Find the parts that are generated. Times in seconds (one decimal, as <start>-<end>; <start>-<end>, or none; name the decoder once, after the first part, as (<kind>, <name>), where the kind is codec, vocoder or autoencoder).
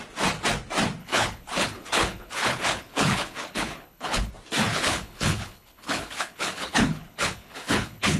1.0-4.3 (codec, HILCodec); 4.7-8.2